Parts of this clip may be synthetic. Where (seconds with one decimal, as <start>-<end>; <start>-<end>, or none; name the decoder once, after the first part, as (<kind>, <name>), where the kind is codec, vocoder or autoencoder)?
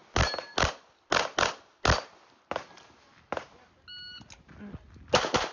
none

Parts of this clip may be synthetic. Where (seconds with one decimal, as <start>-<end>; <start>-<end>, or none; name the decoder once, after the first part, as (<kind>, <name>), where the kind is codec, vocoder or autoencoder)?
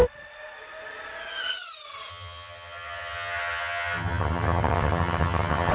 2.1-5.7 (vocoder, HiFi-GAN)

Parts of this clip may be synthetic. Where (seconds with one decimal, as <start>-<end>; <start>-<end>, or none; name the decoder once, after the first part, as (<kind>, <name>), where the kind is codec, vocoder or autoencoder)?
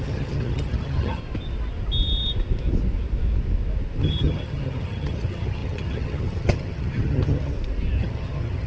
0.0-1.2 (vocoder, HiFi-GAN); 4.0-7.5; 8.0-8.7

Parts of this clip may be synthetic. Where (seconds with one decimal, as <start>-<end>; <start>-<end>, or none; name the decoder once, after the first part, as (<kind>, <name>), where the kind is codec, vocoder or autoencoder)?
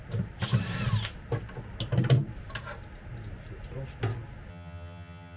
4.5-5.4 (vocoder, HiFi-GAN)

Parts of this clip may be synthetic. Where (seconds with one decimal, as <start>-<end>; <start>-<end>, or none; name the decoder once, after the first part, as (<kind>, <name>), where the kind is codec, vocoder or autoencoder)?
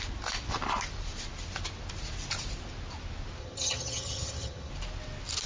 3.4-4.7 (vocoder, HiFi-GAN)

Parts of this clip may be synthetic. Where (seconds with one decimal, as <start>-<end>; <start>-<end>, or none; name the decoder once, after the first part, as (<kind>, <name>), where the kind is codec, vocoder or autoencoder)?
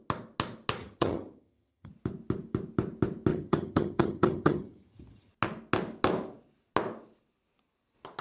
0.8-1.9 (vocoder, HiFi-GAN); 3.3-5.3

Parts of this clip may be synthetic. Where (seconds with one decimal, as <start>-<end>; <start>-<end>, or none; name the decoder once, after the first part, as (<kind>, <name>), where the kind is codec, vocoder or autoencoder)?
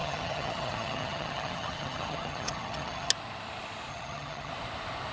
0.0-3.1 (vocoder, HiFi-GAN); 3.9-4.5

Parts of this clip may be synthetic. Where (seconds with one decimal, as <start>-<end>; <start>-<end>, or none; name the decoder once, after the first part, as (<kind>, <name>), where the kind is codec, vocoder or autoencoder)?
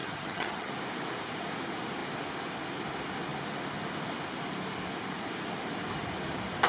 0.0-0.7 (vocoder, HiFi-GAN)